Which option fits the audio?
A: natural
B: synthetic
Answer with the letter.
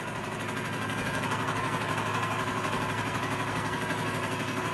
B